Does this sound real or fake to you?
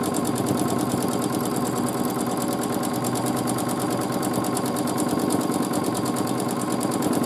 real